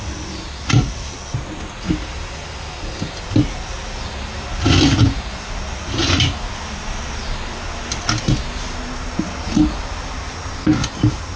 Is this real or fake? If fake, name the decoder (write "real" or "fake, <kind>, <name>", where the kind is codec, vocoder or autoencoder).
real